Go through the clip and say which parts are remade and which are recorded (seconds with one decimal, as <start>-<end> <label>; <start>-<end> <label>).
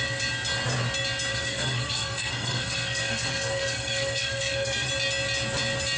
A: 0.0-1.3 recorded; 1.3-4.9 remade; 4.9-6.0 recorded